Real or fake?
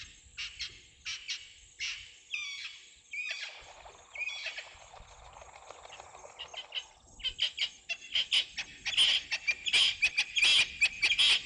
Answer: real